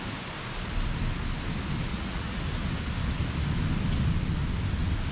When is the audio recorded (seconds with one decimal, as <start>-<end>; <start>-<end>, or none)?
0.0-1.9; 2.4-5.1